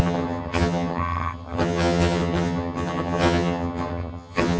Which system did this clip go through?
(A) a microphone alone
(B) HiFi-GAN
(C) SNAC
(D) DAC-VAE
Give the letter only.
B